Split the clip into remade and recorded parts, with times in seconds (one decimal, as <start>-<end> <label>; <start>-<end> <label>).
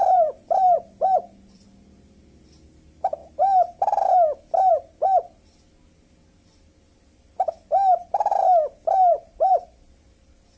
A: 0.0-1.8 remade; 1.8-9.1 recorded; 9.1-10.6 remade